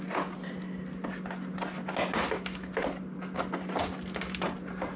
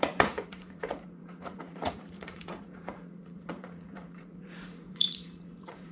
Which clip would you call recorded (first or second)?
first